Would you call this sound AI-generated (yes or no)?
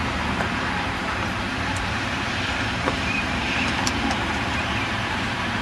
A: yes